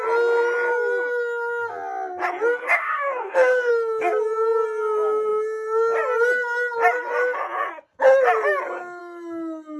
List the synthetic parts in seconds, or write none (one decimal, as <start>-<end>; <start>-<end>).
2.6-3.7